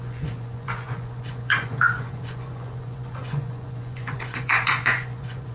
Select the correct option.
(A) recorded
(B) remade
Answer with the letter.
B